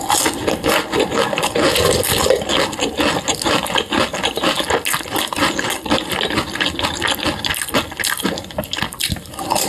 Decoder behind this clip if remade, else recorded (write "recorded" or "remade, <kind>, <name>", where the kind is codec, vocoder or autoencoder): recorded